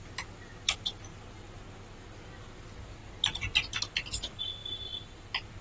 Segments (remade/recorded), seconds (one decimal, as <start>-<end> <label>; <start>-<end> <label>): 0.0-5.6 recorded